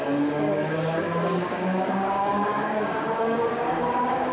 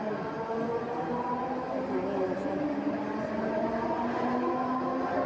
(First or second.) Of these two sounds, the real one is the second